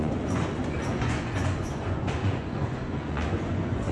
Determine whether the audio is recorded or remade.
remade